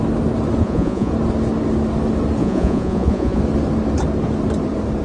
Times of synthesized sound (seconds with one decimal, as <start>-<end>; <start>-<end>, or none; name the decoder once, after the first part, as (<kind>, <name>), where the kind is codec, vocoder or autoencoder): 0.6-1.1 (vocoder, Vocos); 2.4-3.4